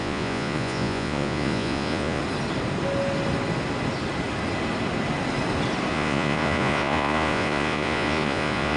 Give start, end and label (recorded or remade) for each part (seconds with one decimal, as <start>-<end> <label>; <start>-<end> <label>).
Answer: 0.0-2.2 remade; 2.2-5.9 recorded; 5.9-8.8 remade

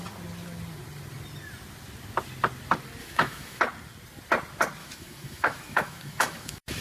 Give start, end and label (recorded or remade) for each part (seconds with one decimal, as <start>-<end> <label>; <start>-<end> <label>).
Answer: 0.0-3.0 recorded; 3.0-3.6 remade; 3.6-4.8 recorded; 4.8-6.8 remade

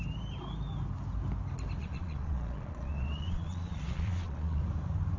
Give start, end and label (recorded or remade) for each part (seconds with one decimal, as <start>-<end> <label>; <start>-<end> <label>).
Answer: 0.0-1.8 recorded; 1.8-4.6 remade; 4.6-5.2 recorded

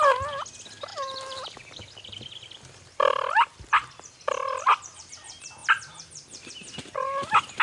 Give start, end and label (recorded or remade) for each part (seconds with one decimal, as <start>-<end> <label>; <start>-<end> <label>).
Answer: 0.0-0.9 recorded; 0.9-5.1 remade; 5.1-7.6 recorded

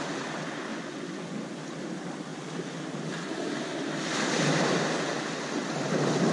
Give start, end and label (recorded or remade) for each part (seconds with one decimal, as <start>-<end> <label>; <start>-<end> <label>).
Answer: 0.0-0.7 recorded; 0.7-1.4 remade; 1.4-6.3 recorded

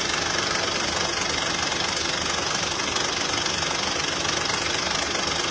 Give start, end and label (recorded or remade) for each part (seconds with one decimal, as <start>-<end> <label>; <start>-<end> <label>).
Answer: 0.0-5.5 recorded

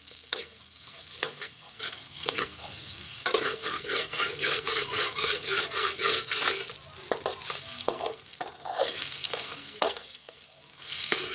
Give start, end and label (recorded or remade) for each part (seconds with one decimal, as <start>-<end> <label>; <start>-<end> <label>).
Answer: 0.0-6.6 remade; 6.6-7.6 recorded; 7.6-11.3 remade

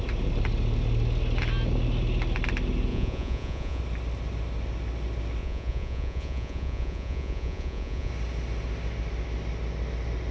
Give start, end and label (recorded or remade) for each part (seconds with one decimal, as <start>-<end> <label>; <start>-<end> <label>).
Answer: 0.0-2.9 recorded; 2.9-3.8 remade; 3.8-5.4 recorded; 5.4-8.1 remade; 8.1-10.3 recorded